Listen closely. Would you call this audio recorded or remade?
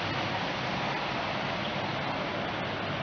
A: recorded